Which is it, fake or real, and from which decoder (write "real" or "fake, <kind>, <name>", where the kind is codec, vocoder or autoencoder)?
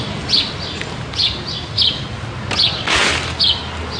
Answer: real